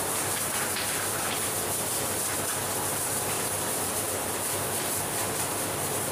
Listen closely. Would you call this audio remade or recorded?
remade